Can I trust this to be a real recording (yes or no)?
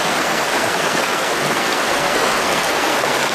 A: no